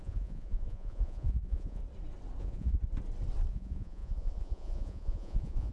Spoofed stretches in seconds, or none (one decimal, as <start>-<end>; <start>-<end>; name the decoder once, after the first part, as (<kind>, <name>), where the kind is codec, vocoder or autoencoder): 0.0-1.8 (vocoder, Vocos); 2.4-2.8; 3.5-5.7